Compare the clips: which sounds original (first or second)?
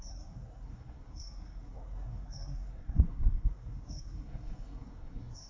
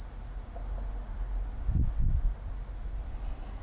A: second